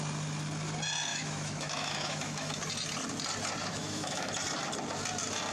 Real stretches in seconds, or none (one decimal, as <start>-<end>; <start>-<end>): 0.0-1.1; 2.6-3.6; 4.3-5.5